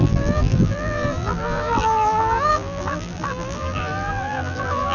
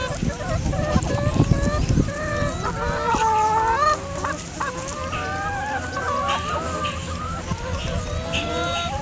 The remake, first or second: first